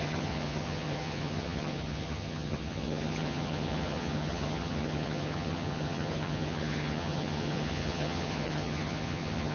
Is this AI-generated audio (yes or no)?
yes